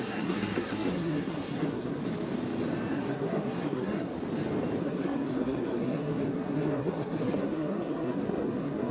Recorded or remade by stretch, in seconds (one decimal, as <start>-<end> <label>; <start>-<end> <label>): 0.0-2.0 remade; 2.0-2.9 recorded; 2.9-4.1 remade; 4.1-4.8 recorded; 4.8-8.9 remade